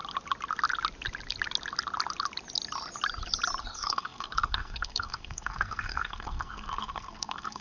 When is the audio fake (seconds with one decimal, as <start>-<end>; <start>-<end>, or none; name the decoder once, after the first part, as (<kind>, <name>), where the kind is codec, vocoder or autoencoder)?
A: 3.6-7.6 (codec, SNAC)